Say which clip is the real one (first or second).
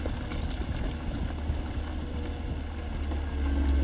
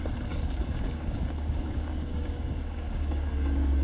first